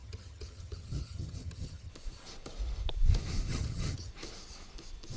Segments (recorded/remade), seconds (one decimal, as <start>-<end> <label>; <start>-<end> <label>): 0.0-1.9 remade; 1.9-3.5 recorded; 3.5-4.1 remade; 4.1-5.2 recorded